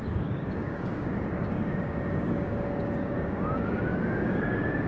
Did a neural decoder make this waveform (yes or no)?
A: yes